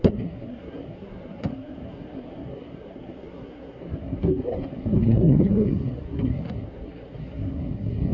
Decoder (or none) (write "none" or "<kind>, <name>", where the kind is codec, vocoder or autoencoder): codec, SNAC